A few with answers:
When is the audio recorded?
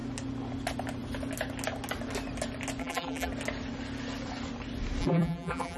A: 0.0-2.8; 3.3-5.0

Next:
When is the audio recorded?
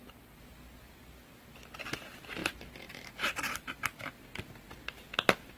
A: 0.0-5.6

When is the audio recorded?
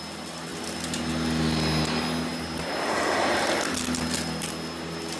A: 0.0-0.5; 1.1-2.3; 3.5-5.2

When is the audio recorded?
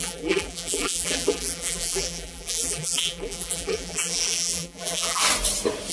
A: 5.2-5.9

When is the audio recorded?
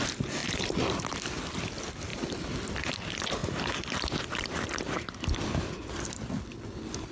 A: 0.0-0.4; 1.6-2.1; 2.7-3.4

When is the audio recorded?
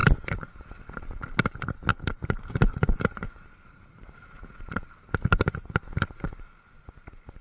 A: 0.7-1.9; 5.1-7.4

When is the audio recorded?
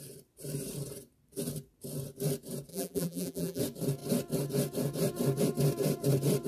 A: 0.0-2.7; 3.6-6.5